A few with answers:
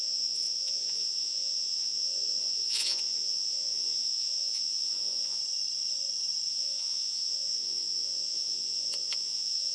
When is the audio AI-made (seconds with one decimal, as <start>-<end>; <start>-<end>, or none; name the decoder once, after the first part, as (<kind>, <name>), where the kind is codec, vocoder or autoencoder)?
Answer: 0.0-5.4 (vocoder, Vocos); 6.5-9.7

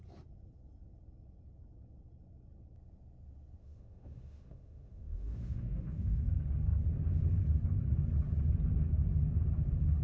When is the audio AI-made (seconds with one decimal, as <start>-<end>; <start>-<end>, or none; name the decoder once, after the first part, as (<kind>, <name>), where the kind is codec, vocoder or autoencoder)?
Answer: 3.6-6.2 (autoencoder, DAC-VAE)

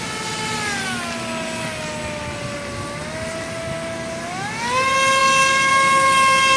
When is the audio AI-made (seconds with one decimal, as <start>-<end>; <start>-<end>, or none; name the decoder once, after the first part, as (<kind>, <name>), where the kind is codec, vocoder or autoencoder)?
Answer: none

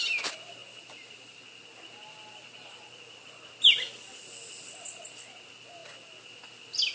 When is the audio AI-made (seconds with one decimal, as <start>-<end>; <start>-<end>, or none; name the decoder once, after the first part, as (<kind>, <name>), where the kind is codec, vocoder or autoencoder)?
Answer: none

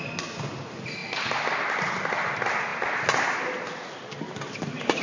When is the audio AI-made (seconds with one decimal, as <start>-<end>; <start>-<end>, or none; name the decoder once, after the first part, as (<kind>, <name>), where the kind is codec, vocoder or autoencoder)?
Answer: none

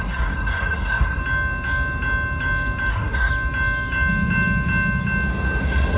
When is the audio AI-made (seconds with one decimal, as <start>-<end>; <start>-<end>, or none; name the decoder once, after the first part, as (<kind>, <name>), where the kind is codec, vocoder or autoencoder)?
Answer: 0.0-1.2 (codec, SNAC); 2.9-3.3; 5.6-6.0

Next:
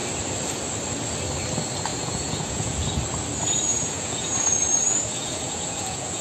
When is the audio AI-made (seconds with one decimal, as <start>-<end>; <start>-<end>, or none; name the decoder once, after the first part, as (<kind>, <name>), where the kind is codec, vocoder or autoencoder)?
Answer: 1.9-3.0 (vocoder, Vocos); 3.7-6.2